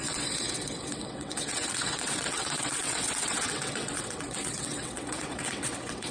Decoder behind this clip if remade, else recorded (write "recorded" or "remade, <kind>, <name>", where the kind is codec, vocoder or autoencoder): remade, vocoder, WaveNeXt